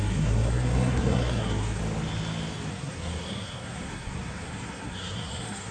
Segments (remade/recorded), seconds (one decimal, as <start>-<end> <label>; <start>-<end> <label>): 0.0-1.8 remade; 1.8-2.7 recorded; 2.7-5.7 remade